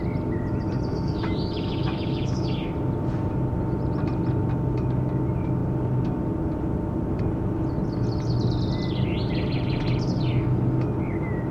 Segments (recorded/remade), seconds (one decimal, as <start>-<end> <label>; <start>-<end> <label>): 0.0-0.9 recorded; 0.9-2.7 remade; 2.7-11.5 recorded